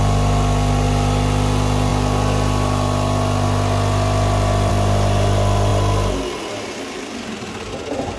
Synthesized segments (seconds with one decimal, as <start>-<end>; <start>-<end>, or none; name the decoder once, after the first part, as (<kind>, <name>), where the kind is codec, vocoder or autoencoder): none